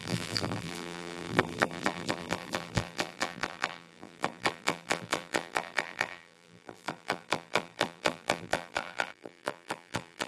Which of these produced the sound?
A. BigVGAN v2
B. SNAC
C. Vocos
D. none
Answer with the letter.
A